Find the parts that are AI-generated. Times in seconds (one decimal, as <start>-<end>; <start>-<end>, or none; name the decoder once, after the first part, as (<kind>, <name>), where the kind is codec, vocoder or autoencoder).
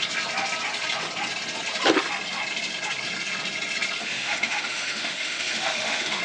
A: 4.0-6.2 (autoencoder, DAC-VAE)